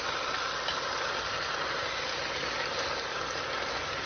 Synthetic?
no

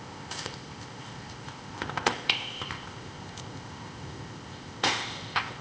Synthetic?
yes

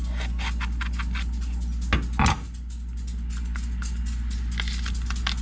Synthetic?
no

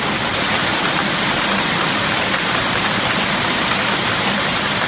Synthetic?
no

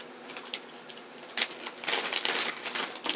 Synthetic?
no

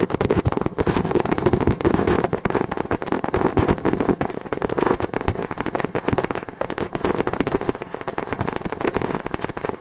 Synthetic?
yes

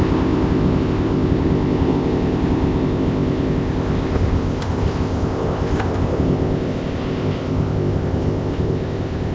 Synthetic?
yes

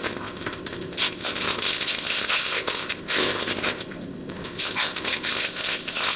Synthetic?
yes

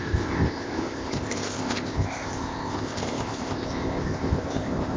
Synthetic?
yes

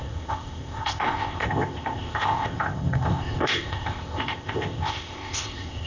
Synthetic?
yes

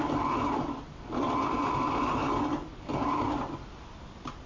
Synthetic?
no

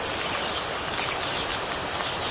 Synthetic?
no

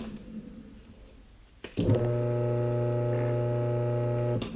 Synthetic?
no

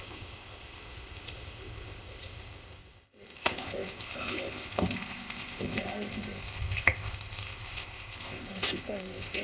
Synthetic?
yes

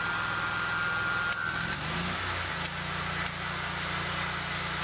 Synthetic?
no